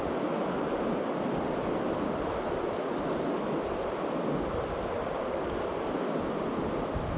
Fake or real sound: real